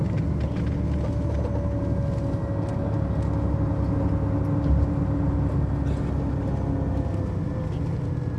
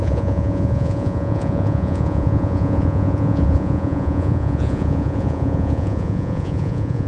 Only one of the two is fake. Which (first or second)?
second